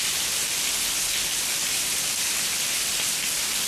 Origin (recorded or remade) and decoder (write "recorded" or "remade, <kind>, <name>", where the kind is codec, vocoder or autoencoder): recorded